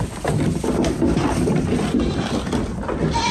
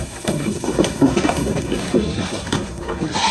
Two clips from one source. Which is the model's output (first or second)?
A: second